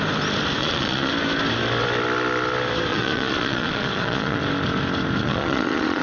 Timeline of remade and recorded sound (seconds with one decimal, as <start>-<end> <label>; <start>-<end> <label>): 0.0-0.6 recorded; 0.6-1.1 remade; 1.1-2.9 recorded; 2.9-4.4 remade; 4.4-5.2 recorded; 5.2-6.0 remade